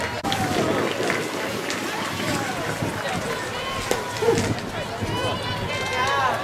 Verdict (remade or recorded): recorded